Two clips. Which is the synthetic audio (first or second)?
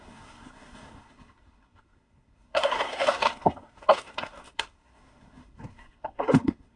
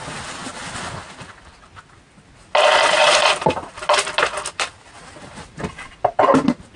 first